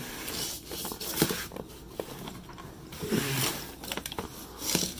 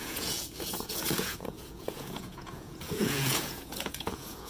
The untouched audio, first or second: first